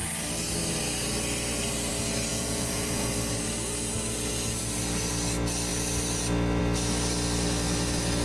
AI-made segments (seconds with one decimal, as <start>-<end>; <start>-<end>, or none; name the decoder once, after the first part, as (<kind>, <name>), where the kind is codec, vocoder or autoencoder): 2.3-3.1 (vocoder, Vocos)